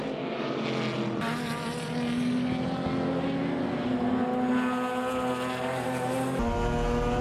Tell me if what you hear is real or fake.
real